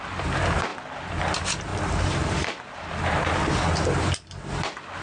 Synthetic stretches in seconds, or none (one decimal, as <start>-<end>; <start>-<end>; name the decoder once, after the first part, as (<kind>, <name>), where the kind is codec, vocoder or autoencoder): none